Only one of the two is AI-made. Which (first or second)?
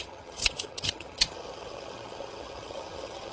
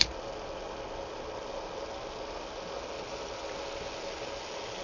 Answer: first